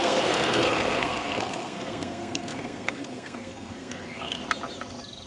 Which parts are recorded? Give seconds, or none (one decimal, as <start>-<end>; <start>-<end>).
4.4-5.3